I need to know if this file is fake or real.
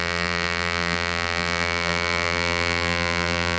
fake